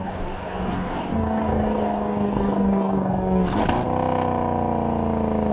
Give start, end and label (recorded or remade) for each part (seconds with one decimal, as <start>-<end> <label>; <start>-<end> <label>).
0.0-3.6 remade; 3.6-5.5 recorded